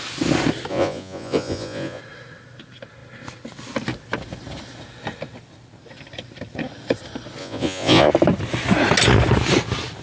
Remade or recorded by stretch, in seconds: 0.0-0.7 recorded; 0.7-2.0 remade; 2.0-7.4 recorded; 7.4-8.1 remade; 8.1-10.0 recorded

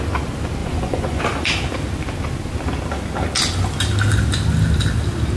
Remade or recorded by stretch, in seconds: 0.0-0.6 recorded; 0.6-1.2 remade; 1.2-5.4 recorded

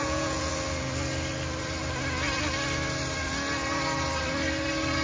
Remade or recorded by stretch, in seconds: 0.0-0.5 remade; 0.5-5.0 recorded